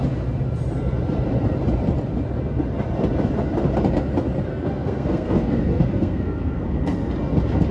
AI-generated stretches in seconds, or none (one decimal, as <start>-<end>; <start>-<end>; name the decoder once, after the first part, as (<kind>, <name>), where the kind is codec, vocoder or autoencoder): 4.5-7.1 (codec, SNAC)